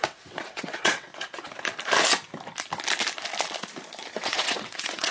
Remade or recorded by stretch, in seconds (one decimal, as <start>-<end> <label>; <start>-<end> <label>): 0.0-1.1 remade; 1.1-4.2 recorded; 4.2-5.1 remade